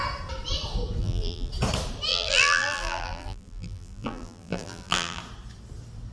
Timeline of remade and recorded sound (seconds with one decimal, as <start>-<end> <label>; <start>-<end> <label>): 0.0-1.0 recorded; 1.0-1.5 remade; 1.5-2.1 recorded; 2.1-5.2 remade; 5.2-6.1 recorded